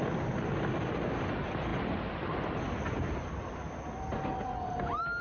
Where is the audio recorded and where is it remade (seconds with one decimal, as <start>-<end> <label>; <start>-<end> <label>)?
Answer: 0.0-5.2 recorded